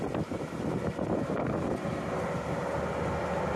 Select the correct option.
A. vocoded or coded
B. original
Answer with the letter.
B